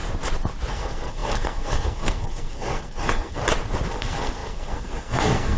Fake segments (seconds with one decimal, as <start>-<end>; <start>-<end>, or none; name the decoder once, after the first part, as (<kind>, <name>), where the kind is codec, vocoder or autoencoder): 0.7-3.4 (codec, SNAC); 3.9-5.6